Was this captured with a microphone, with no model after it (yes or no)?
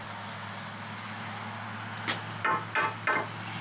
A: yes